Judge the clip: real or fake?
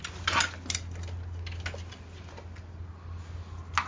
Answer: real